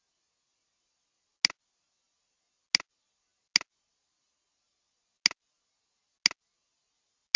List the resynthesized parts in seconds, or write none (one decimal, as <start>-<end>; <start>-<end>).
none